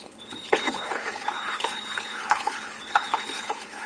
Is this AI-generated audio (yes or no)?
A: yes